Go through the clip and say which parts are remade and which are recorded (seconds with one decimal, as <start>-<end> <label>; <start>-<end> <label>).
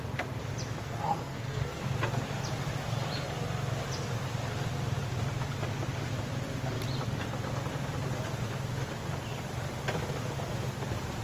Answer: 0.0-0.8 recorded; 0.8-1.8 remade; 1.8-11.2 recorded